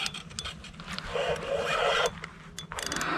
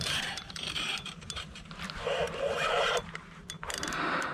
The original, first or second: first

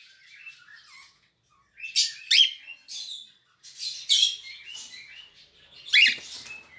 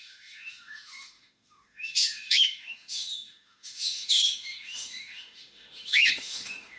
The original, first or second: first